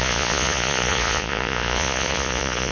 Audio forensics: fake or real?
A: fake